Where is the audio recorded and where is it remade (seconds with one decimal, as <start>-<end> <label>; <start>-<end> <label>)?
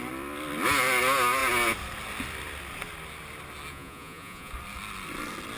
0.0-3.7 recorded; 3.7-4.5 remade; 4.5-5.6 recorded